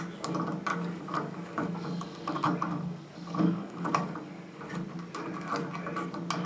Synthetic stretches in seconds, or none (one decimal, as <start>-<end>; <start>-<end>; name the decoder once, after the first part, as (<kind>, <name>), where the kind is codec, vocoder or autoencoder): 0.7-4.6 (codec, DAC)